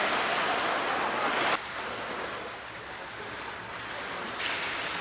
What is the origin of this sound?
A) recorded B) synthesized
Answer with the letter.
A